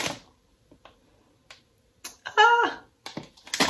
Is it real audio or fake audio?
real